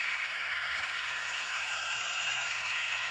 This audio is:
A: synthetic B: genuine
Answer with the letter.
A